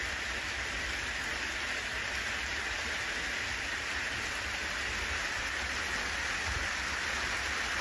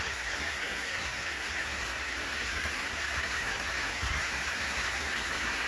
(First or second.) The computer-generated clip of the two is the second